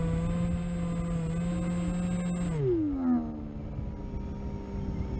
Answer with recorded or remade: recorded